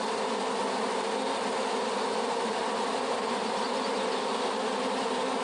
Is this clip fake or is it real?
real